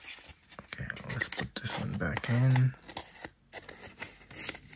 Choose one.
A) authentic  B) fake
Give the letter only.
A